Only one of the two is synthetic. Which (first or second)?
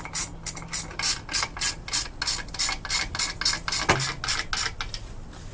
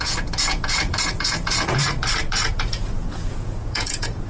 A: second